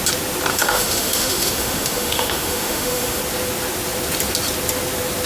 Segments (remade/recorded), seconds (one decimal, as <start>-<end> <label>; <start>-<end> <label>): 0.0-0.5 recorded; 0.5-3.2 remade; 3.2-5.3 recorded